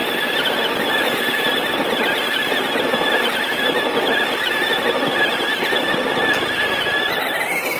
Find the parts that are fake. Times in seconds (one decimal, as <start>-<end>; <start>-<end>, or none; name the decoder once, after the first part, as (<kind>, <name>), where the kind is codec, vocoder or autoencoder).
none